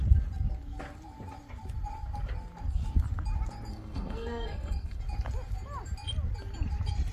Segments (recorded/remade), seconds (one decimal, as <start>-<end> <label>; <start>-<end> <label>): 0.0-3.7 recorded; 3.7-5.0 remade; 5.0-7.1 recorded